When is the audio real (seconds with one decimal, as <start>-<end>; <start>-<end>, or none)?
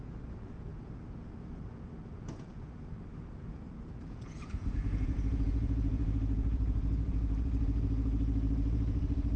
none